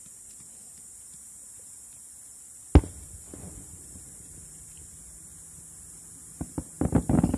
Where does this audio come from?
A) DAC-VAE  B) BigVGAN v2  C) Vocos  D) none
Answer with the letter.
D